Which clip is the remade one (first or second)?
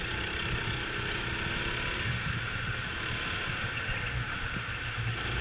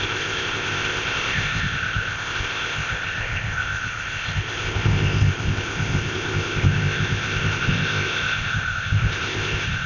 second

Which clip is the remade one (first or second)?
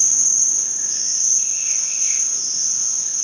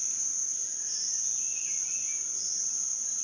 first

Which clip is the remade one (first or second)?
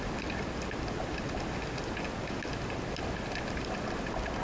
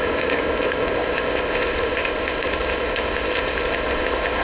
second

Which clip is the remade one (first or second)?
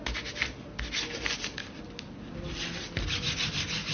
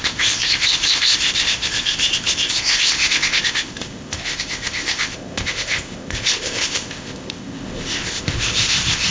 second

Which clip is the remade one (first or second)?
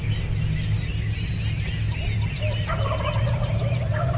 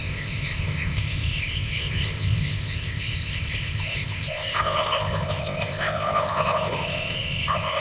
second